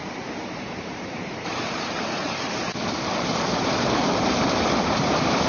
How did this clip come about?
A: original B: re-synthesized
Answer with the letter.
B